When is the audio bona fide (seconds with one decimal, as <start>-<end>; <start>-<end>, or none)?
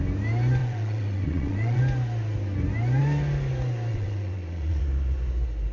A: 0.0-0.6; 1.8-3.9; 4.8-5.7